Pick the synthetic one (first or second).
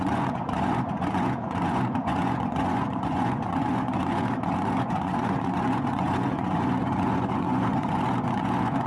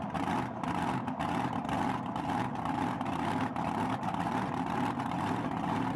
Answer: first